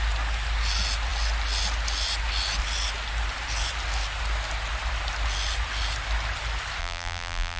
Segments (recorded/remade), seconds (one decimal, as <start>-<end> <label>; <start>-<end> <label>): 0.0-6.8 recorded; 6.8-7.6 remade